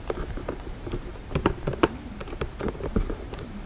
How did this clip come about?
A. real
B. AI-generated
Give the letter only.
B